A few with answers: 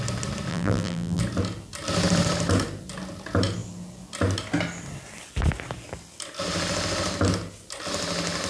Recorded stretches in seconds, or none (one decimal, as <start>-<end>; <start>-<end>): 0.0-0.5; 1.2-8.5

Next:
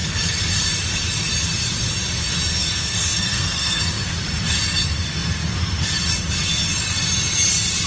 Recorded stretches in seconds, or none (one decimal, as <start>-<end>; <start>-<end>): 0.0-2.6; 3.8-7.9

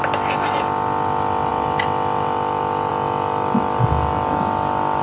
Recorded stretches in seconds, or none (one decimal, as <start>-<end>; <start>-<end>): 0.0-5.0